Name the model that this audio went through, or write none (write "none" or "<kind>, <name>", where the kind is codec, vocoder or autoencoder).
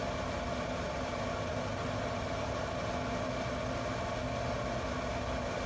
none